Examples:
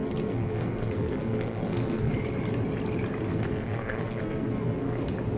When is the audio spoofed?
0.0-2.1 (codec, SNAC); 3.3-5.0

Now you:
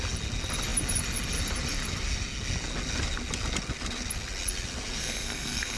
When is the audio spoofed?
5.0-5.8 (codec, SNAC)

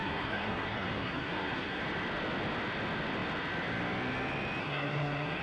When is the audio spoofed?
0.0-1.8 (codec, SNAC); 4.6-5.4